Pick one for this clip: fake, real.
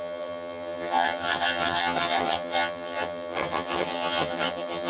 fake